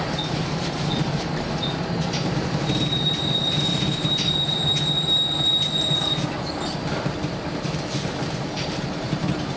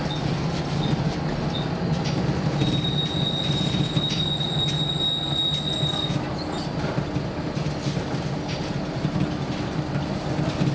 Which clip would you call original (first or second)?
second